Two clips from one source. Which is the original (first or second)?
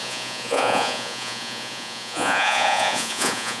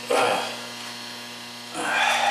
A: second